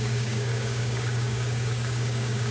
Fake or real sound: fake